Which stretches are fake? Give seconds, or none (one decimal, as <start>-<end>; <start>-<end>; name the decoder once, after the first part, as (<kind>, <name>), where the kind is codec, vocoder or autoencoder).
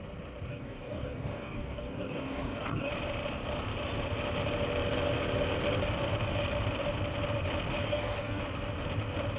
0.5-2.9 (codec, DAC); 7.8-8.4